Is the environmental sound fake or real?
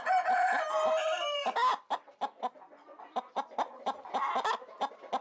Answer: real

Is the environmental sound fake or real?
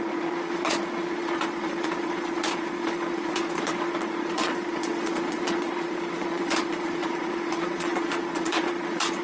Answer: fake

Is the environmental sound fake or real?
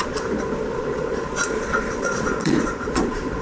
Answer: fake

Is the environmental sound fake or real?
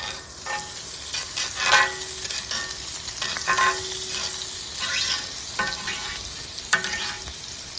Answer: real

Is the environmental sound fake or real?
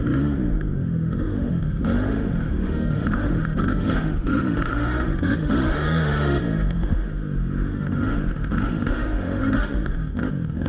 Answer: fake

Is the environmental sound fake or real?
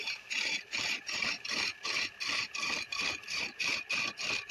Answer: fake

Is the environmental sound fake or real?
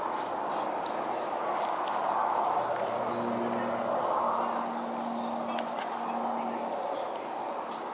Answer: real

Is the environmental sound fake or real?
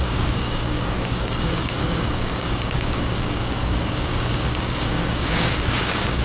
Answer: fake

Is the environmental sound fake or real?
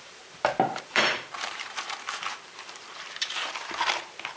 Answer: fake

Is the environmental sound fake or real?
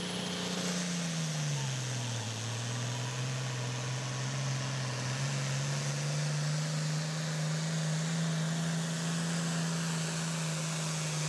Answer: real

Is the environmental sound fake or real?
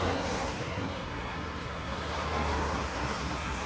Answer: fake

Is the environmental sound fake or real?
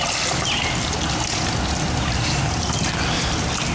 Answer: real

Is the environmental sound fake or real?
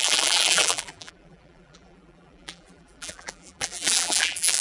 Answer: fake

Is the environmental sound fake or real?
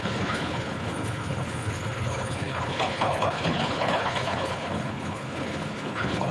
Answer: fake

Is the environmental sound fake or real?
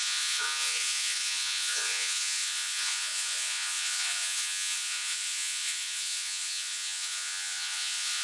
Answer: fake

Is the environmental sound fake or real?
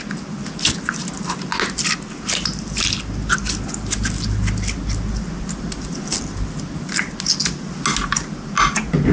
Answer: real